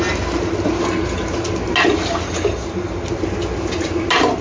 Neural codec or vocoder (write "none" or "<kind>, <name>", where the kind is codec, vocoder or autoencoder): none